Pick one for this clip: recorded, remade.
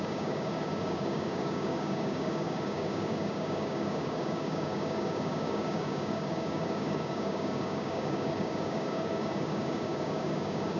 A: remade